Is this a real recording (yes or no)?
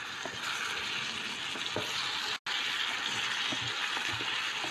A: yes